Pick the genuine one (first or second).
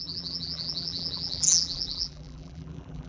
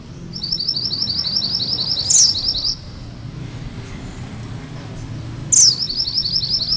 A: second